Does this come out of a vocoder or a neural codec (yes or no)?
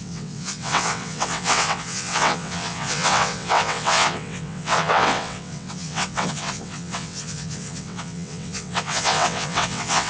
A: yes